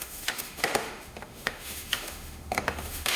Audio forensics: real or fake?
fake